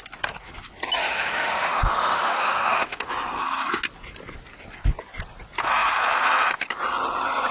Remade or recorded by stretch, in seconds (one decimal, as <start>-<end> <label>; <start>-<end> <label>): 0.0-1.0 recorded; 1.0-3.1 remade; 3.1-7.5 recorded